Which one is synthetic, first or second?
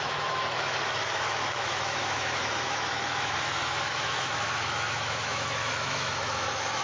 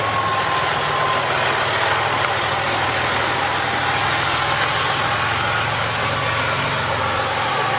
first